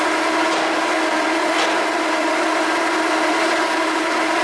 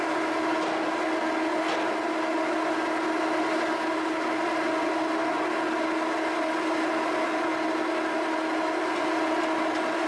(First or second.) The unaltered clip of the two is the second